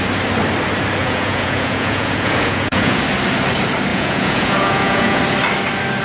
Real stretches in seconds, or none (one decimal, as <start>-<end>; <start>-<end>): 0.0-1.0; 3.0-3.9; 5.2-6.0